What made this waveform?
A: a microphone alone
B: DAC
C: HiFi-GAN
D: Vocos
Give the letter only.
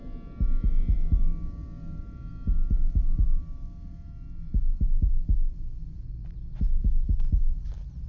A